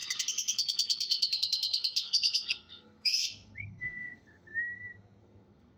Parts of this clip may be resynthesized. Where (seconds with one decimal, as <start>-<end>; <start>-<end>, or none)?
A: 0.0-4.5; 5.2-5.8